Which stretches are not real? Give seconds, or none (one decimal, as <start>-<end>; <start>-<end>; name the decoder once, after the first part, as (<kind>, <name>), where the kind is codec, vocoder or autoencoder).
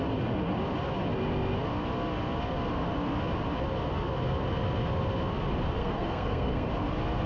5.8-6.7 (codec, SNAC)